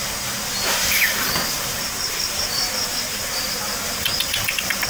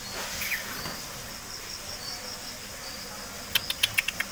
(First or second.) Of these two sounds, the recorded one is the second